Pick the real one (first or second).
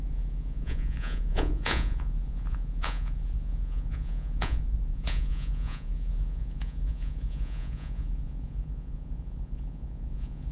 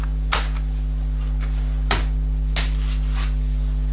second